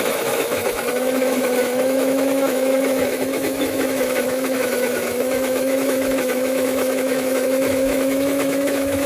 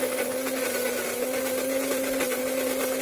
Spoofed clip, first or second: first